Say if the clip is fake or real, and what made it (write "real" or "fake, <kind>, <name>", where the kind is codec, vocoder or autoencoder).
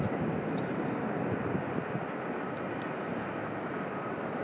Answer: real